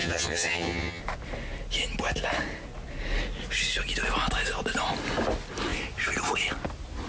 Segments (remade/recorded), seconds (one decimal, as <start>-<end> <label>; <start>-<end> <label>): 0.0-1.0 remade; 1.0-7.1 recorded